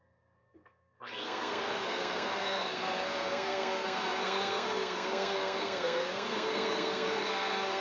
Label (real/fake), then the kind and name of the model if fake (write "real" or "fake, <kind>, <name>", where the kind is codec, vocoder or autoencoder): fake, codec, SNAC